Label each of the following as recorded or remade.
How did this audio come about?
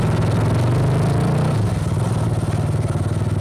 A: recorded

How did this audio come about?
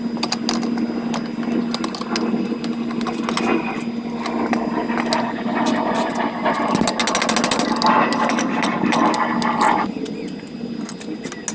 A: recorded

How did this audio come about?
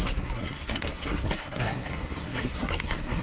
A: remade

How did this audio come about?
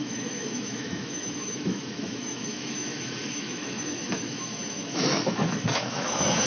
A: remade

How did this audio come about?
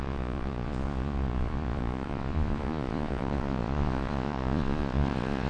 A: remade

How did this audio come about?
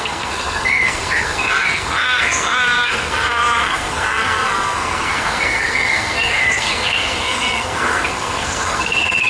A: remade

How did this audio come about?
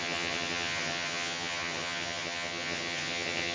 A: remade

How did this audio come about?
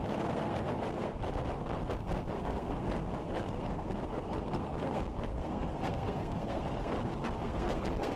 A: remade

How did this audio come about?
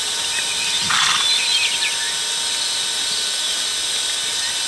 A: remade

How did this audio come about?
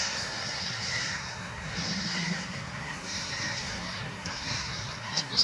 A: remade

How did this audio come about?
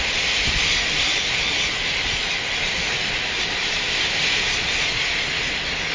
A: recorded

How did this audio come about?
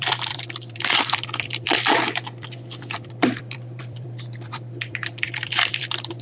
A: remade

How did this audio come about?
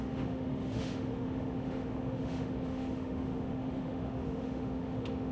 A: remade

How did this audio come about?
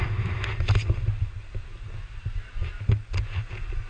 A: recorded